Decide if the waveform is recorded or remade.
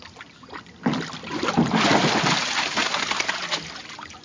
recorded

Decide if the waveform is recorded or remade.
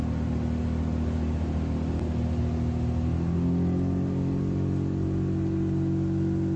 recorded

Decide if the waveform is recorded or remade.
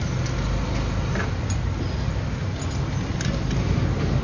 recorded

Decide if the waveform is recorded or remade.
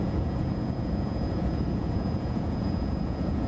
remade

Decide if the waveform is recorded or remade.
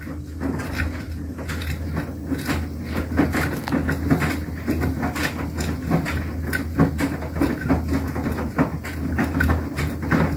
recorded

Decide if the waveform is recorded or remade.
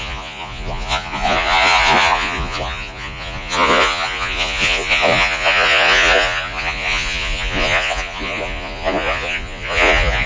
remade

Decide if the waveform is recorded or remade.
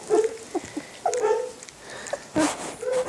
recorded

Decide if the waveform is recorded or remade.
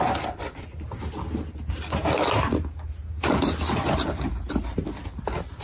recorded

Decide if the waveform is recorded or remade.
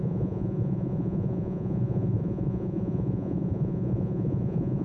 remade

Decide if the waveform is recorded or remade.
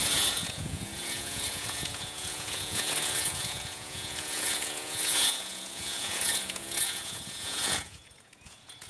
remade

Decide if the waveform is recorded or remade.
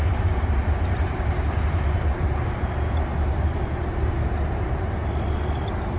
recorded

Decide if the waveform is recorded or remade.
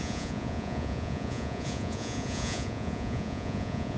remade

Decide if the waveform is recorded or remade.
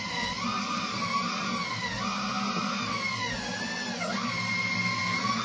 recorded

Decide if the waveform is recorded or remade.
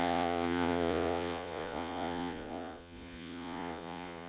remade